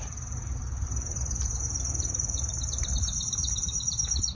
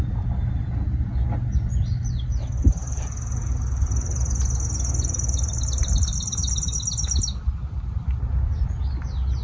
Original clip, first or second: second